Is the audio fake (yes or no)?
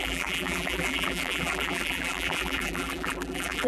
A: yes